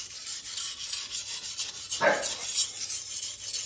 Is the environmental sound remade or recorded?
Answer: recorded